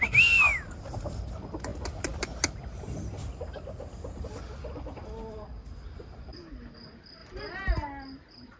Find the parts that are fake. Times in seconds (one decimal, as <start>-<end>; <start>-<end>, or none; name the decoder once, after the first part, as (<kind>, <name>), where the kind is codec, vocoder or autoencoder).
none